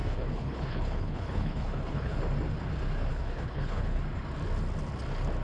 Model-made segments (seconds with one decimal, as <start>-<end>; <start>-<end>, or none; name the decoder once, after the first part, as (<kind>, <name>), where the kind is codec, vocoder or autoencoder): 0.0-2.2 (codec, HILCodec); 3.1-4.0